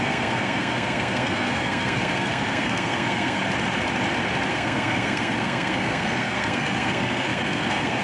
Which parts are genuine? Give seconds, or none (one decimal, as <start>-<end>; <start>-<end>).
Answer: 3.4-4.5

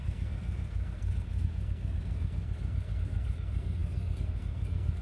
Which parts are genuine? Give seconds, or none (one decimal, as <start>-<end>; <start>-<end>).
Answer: none

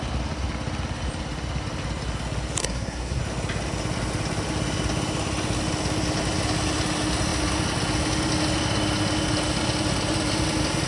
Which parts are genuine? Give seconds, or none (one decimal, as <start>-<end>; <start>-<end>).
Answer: 0.0-2.6; 3.2-10.9

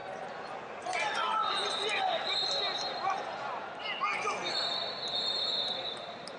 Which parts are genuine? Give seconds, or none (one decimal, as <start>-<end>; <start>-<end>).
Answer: 0.0-6.4